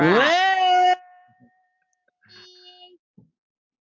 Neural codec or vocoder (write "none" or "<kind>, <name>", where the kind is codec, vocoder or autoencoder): none